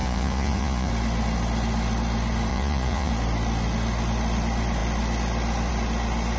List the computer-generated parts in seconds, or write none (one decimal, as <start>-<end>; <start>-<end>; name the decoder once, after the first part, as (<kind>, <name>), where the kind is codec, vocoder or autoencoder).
0.0-0.9 (vocoder, Vocos); 2.5-3.1